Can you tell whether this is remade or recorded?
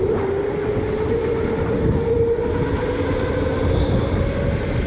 recorded